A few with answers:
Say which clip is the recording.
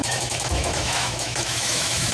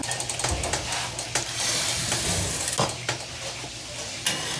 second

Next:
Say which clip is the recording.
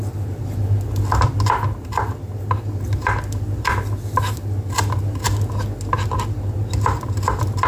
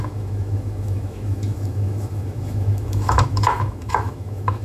first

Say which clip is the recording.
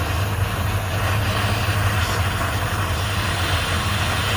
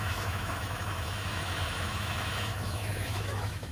first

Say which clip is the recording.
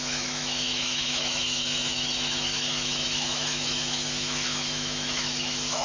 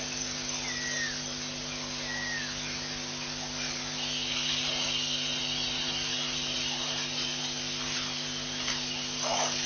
second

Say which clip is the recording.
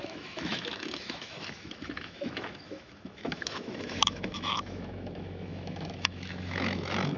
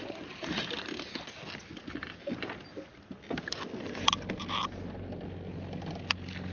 second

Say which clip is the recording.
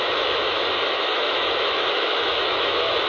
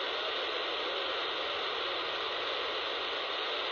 second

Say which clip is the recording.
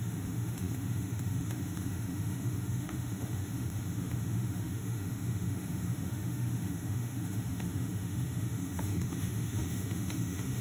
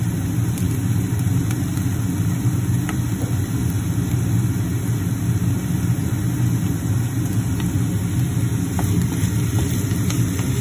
second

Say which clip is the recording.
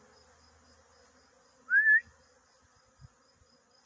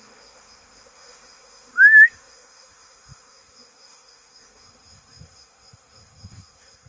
first